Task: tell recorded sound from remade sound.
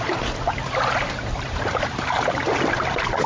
recorded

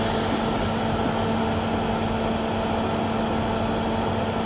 recorded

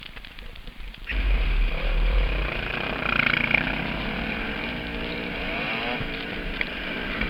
remade